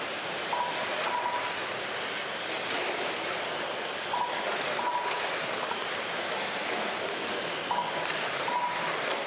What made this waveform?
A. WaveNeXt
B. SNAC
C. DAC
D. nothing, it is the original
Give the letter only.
D